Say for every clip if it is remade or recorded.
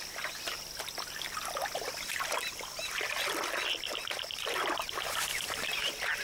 remade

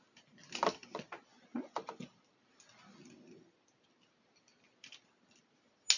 recorded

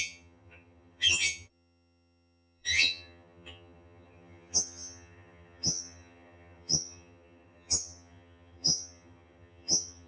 remade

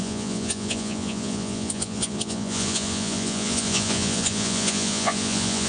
remade